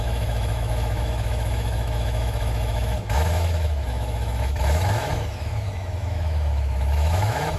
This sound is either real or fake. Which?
fake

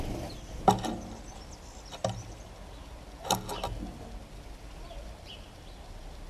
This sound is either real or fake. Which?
real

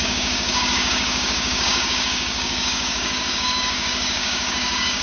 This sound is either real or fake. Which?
fake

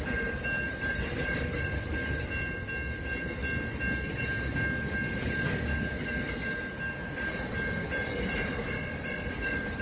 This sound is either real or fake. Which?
real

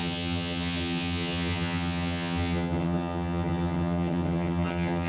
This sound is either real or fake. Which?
fake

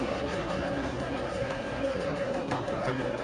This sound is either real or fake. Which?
fake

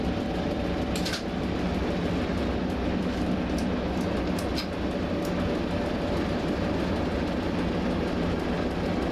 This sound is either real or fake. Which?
real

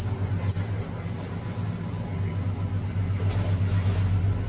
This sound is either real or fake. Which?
real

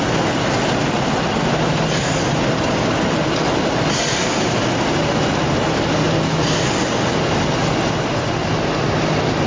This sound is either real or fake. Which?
real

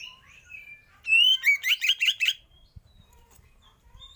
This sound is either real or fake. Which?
fake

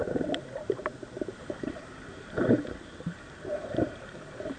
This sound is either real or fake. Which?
fake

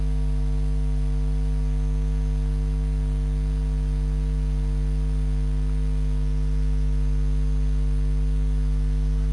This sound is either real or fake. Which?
real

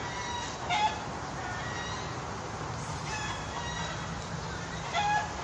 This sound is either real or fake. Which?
real